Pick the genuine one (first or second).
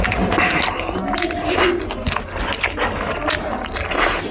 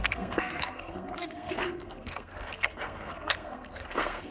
first